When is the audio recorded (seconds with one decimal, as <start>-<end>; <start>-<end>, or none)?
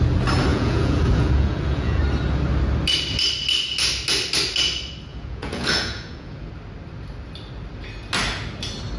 0.0-0.5; 2.0-5.1; 6.5-9.0